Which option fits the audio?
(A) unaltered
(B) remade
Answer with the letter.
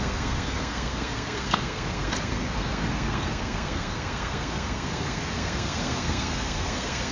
B